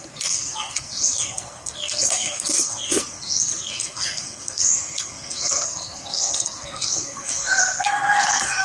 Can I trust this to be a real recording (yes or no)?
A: no